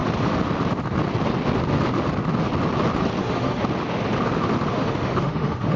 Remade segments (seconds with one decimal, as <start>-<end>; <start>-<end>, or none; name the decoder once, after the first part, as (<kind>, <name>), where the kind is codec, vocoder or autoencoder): 3.2-3.6 (autoencoder, DAC-VAE); 4.7-5.8